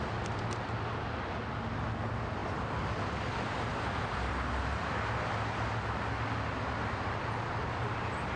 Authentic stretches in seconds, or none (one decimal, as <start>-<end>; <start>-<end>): 0.0-8.4